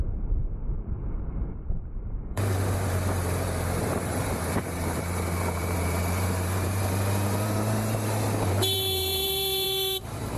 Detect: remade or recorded remade